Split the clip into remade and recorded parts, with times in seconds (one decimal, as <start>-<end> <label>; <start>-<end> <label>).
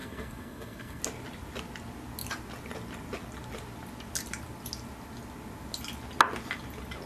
0.0-1.0 remade; 1.0-7.1 recorded